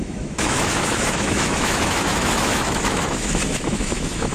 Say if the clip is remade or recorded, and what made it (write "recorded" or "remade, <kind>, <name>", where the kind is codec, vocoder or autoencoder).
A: remade, autoencoder, DAC-VAE